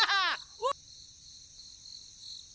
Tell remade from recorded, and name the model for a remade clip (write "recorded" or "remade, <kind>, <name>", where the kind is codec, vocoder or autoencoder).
recorded